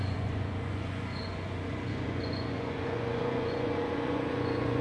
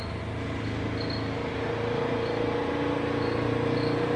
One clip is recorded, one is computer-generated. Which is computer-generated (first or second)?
first